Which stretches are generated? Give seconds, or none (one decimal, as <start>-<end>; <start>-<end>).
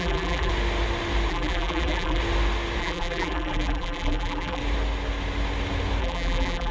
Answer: 0.0-0.5; 1.3-2.2; 2.8-4.6; 6.0-6.7